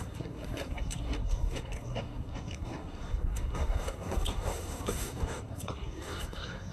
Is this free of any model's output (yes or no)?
no